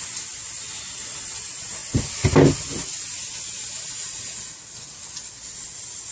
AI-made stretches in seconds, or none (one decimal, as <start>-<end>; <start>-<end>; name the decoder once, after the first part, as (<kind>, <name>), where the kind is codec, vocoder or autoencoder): 0.0-1.8 (vocoder, BigVGAN v2); 5.5-6.1